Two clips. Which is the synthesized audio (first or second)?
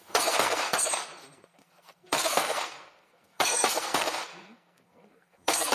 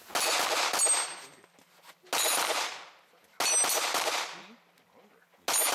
first